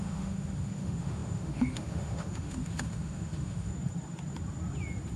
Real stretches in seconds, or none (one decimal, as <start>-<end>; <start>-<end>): 3.7-5.2